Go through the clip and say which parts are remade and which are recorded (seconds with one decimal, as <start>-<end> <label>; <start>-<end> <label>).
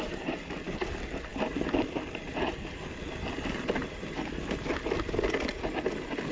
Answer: 0.0-6.3 recorded